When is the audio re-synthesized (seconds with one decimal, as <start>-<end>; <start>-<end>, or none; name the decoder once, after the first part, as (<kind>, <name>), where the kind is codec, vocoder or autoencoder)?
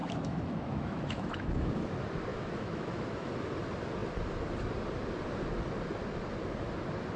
0.0-1.7 (autoencoder, DAC-VAE); 2.3-3.3